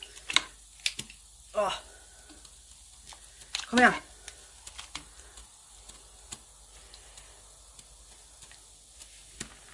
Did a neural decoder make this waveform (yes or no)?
no